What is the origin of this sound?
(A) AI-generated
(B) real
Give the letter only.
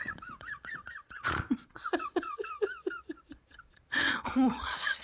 A